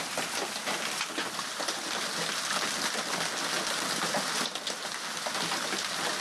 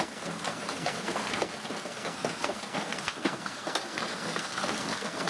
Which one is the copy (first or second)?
second